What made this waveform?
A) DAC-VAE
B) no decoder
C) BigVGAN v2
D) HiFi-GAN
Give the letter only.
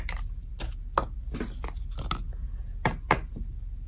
B